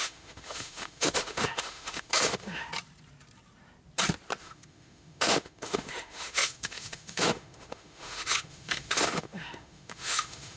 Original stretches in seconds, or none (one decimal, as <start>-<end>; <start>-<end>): 2.7-4.4